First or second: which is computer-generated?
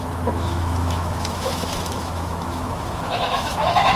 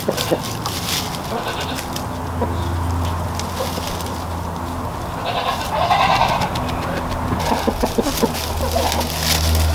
first